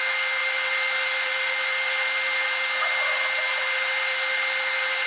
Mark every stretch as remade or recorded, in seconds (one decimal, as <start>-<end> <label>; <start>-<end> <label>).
0.0-5.1 recorded

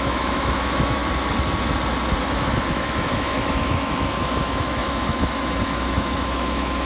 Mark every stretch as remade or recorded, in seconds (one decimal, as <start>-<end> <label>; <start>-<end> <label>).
0.0-1.0 remade; 1.0-2.2 recorded; 2.2-6.8 remade

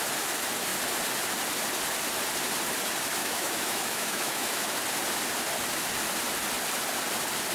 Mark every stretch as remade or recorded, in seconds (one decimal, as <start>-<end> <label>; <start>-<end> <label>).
0.0-3.2 recorded; 3.2-4.8 remade; 4.8-7.5 recorded

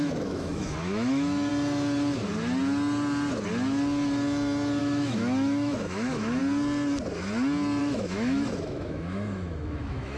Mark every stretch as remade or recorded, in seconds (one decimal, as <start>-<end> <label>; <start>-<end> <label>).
0.0-1.5 remade; 1.5-4.8 recorded; 4.8-6.4 remade; 6.4-7.8 recorded; 7.8-10.2 remade

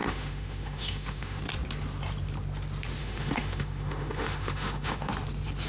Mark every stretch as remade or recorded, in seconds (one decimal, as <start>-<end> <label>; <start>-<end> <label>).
0.0-1.4 remade; 1.4-3.0 recorded; 3.0-5.1 remade; 5.1-5.7 recorded

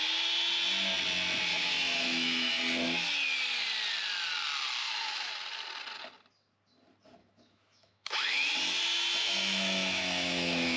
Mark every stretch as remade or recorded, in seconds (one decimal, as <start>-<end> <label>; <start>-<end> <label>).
0.0-1.5 recorded; 1.5-2.5 remade; 2.5-4.8 recorded; 4.8-5.3 remade; 5.3-7.2 recorded; 7.2-8.5 remade; 8.5-9.2 recorded; 9.2-10.8 remade